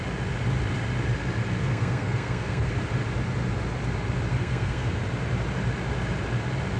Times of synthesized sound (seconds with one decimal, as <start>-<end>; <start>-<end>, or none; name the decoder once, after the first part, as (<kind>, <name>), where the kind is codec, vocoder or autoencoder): 1.6-2.7 (codec, SNAC); 4.3-5.0